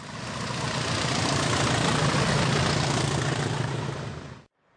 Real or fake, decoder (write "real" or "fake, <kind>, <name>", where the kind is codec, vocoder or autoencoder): fake, vocoder, BigVGAN v2